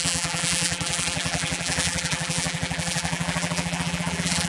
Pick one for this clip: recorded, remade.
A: remade